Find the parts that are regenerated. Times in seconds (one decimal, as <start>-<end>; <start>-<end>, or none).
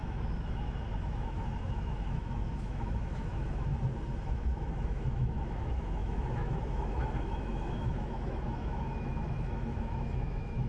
0.0-3.7; 4.3-10.7